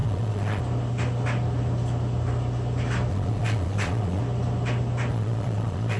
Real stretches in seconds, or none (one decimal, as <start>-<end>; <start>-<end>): 0.6-3.1; 4.2-5.1